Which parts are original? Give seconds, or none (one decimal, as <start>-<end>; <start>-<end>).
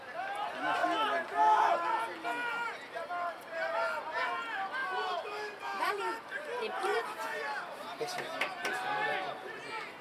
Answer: 0.0-4.8; 5.9-10.0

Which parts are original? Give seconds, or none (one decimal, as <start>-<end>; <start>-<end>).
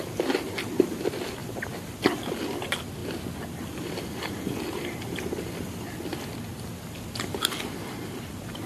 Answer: 0.0-1.4; 2.0-3.0; 3.9-8.7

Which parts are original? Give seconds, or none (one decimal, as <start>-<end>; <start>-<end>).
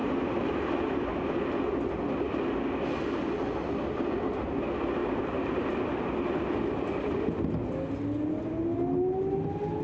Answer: 1.1-5.0; 5.6-9.8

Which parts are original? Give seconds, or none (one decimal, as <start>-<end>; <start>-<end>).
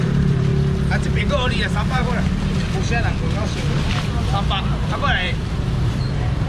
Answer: 0.5-1.2; 2.0-4.7